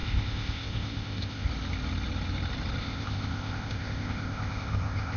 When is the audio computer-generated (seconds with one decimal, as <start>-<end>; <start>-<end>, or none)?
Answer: 0.0-1.5; 2.8-5.2